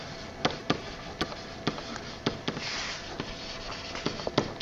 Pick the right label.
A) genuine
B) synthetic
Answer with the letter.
A